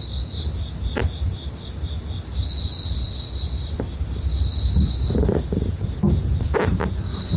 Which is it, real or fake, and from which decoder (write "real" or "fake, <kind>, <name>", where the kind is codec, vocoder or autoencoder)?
real